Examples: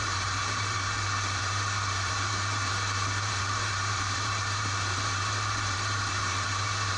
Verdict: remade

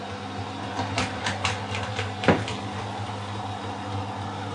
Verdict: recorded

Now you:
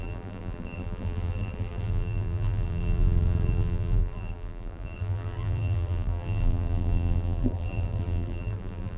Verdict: remade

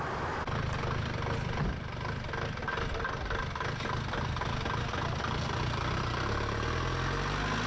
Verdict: recorded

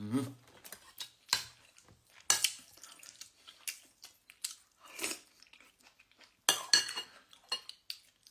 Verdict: recorded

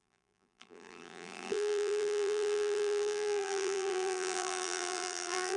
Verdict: remade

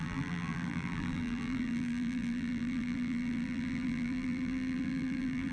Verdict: remade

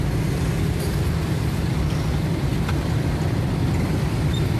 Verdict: remade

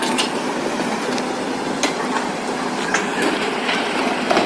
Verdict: recorded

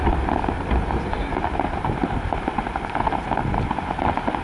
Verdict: remade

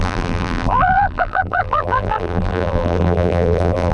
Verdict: remade